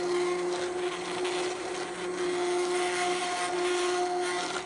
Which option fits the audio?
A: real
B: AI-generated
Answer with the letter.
A